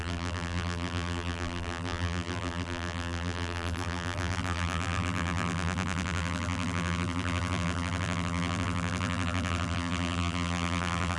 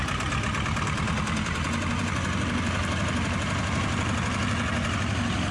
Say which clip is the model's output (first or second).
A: first